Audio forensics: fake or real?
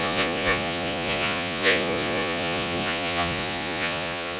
fake